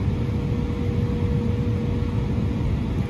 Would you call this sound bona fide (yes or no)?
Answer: yes